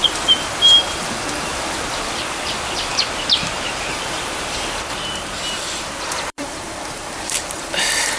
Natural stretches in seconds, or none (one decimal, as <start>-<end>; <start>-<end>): 2.9-3.9